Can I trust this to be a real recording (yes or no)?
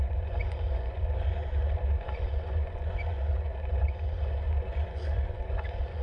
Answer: no